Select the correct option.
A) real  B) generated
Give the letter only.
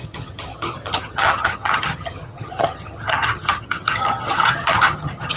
B